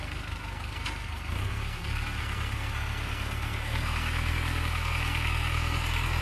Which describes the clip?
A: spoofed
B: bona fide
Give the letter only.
A